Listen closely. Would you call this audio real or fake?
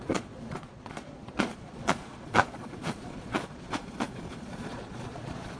fake